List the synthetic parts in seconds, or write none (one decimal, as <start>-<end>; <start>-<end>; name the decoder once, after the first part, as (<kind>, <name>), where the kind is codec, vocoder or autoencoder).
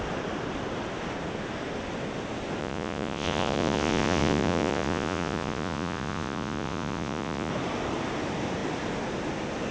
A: 2.6-7.5 (vocoder, Vocos)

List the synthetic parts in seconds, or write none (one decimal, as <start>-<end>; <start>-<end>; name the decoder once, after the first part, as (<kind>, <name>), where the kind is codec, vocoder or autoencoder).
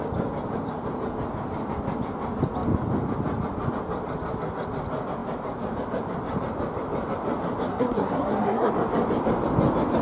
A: 7.7-8.7 (codec, SNAC)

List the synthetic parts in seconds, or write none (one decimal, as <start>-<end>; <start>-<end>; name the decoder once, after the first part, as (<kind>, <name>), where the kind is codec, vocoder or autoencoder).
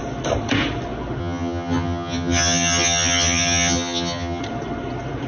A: 1.2-4.4 (vocoder, HiFi-GAN)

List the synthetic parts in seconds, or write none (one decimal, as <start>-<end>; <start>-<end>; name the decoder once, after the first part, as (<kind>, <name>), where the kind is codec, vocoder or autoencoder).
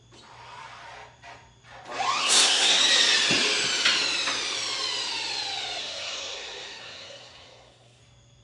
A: 2.2-2.8 (codec, SNAC); 5.8-8.0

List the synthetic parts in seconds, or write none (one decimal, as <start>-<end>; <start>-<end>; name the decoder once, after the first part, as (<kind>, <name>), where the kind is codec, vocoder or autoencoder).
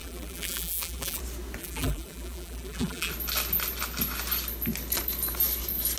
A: 0.0-1.2 (vocoder, BigVGAN v2); 1.6-3.1